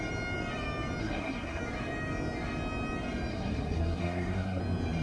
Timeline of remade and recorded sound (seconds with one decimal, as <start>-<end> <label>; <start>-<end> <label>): 0.0-1.0 recorded; 1.0-1.6 remade; 1.6-3.3 recorded; 3.3-4.6 remade; 4.6-5.0 recorded